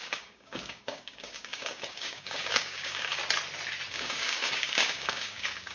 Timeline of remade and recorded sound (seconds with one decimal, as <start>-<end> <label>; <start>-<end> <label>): 0.0-3.2 remade; 3.2-3.9 recorded; 3.9-5.7 remade